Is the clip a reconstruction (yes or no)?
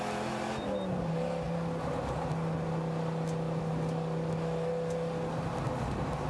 no